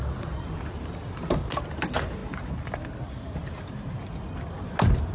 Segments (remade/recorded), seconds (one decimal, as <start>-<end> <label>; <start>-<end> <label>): 0.0-5.1 recorded